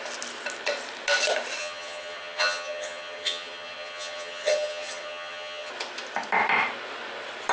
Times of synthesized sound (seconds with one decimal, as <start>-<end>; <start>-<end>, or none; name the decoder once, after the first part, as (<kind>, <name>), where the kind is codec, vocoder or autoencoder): 1.6-5.7 (vocoder, HiFi-GAN)